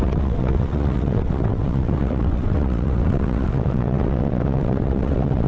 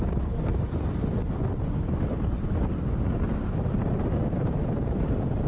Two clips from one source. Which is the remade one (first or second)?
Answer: first